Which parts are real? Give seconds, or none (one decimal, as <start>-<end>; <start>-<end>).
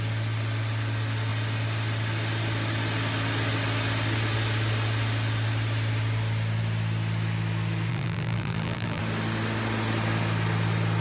0.0-7.9; 9.0-11.0